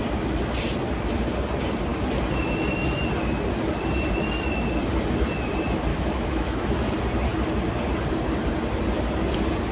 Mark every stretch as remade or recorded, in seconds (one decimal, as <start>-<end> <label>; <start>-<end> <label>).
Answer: 0.0-5.9 recorded; 5.9-6.6 remade; 6.6-9.7 recorded